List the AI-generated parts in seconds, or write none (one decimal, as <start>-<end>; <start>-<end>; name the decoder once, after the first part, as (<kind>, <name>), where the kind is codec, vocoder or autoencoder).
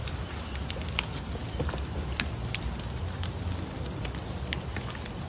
none